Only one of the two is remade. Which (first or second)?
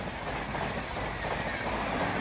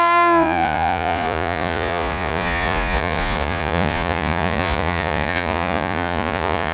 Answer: second